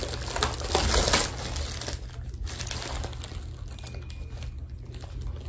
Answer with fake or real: real